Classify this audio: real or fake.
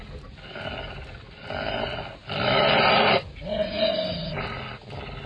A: real